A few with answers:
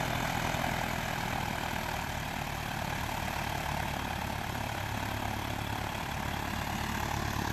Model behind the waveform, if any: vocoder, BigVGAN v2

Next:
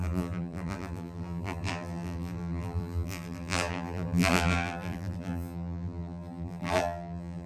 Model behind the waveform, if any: vocoder, BigVGAN v2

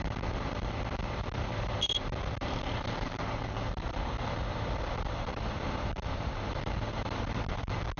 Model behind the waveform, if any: vocoder, BigVGAN v2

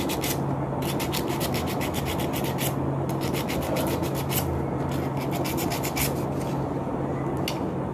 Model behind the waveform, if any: none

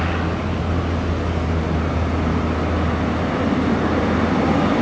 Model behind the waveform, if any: none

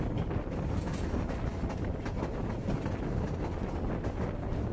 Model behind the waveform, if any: none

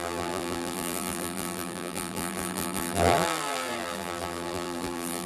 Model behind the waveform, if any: vocoder, BigVGAN v2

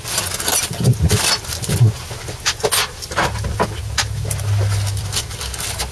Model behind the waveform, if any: none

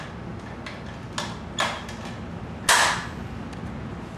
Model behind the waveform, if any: none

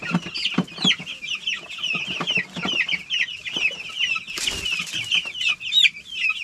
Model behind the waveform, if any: none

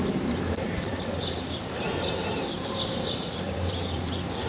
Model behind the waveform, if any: vocoder, BigVGAN v2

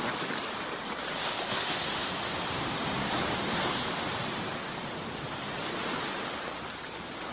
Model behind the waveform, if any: none